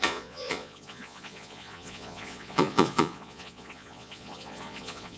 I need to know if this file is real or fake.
fake